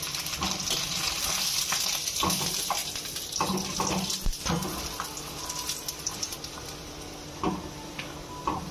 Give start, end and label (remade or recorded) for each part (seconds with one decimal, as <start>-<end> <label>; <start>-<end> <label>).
0.0-8.7 recorded